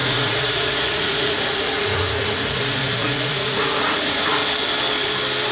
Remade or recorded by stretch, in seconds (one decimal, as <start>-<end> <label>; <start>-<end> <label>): 0.0-4.4 remade; 4.4-5.5 recorded